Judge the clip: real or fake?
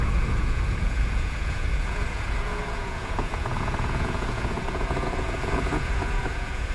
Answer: fake